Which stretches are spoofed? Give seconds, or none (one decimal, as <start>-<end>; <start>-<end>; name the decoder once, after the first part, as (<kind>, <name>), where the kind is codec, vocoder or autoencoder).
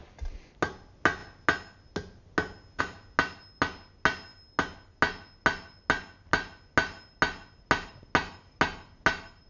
none